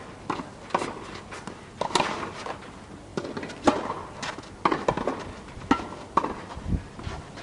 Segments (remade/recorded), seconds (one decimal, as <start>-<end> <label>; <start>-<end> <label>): 0.0-7.4 recorded